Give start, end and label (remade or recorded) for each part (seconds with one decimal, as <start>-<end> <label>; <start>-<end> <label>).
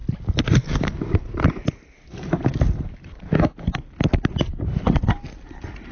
0.0-5.9 recorded